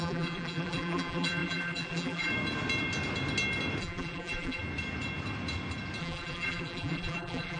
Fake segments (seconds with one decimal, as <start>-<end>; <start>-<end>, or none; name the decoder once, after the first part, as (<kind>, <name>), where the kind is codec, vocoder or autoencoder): 0.0-2.3 (vocoder, BigVGAN v2); 3.8-4.6; 6.0-7.6